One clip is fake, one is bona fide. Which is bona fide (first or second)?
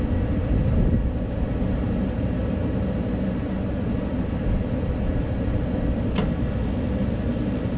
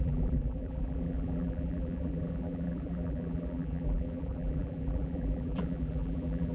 first